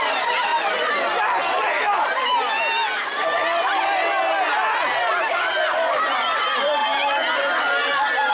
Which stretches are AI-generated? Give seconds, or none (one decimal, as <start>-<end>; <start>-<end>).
0.0-0.5; 5.0-6.8